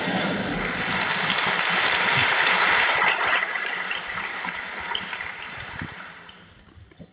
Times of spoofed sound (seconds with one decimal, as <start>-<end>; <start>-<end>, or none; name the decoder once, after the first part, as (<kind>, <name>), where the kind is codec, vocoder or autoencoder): 2.2-6.5 (vocoder, BigVGAN v2)